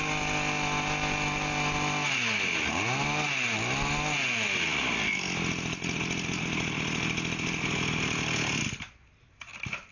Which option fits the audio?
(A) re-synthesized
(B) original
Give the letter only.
B